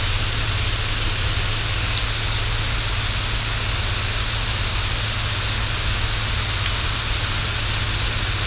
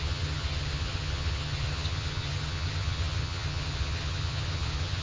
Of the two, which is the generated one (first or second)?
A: second